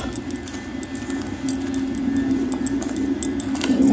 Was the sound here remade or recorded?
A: recorded